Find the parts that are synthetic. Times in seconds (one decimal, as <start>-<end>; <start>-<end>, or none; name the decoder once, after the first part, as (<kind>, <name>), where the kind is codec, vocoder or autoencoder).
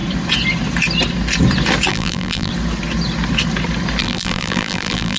1.9-2.5 (vocoder, BigVGAN v2); 4.0-5.2